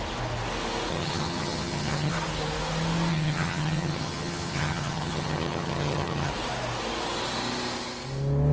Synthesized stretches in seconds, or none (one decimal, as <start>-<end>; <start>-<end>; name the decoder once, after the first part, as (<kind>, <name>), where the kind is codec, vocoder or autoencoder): 0.9-2.1 (vocoder, HiFi-GAN); 3.1-6.3